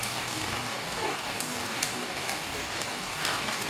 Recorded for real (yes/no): no